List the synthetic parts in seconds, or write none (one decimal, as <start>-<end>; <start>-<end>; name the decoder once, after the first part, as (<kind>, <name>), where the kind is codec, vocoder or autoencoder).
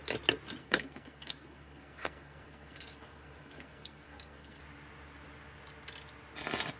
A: 0.6-4.6 (codec, SNAC)